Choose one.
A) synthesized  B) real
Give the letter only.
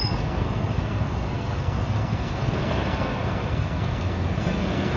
A